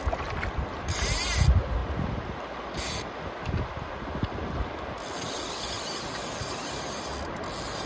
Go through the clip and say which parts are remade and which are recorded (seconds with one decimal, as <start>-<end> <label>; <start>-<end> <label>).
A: 0.0-7.9 recorded